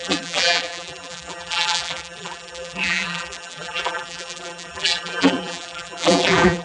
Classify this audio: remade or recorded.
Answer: remade